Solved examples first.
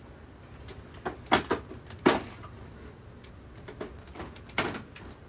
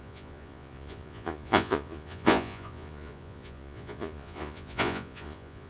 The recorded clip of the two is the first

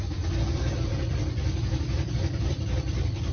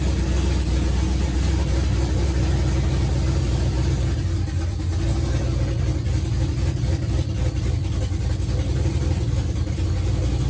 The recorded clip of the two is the second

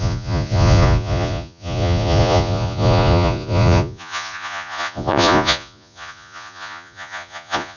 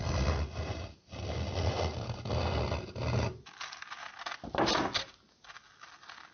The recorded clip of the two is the second